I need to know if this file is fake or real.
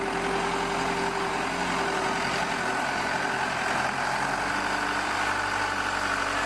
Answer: real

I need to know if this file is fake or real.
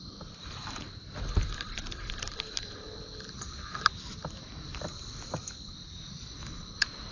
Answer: fake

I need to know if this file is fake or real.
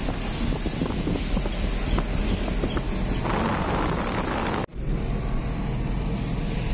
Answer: real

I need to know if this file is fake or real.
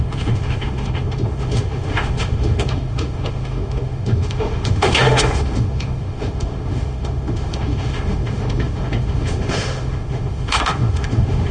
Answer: fake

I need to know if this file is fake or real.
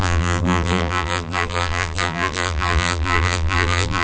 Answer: fake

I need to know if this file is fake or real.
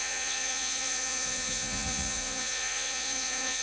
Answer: fake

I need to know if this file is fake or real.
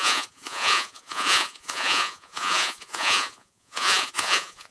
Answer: fake